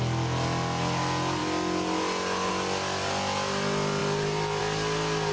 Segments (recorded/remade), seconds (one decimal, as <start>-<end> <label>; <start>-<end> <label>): 0.0-4.0 recorded; 4.0-4.6 remade; 4.6-5.3 recorded